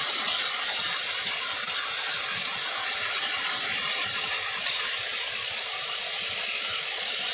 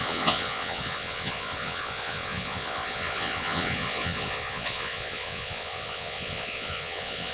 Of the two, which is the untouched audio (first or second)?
first